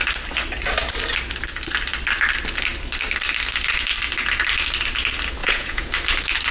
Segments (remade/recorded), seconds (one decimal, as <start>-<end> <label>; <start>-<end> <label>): 0.0-5.4 recorded; 5.4-5.9 remade; 5.9-6.5 recorded